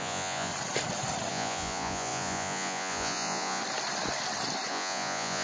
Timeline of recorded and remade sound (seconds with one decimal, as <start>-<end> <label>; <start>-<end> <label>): 0.0-0.5 remade; 0.5-1.3 recorded; 1.3-3.6 remade; 3.6-4.7 recorded; 4.7-5.4 remade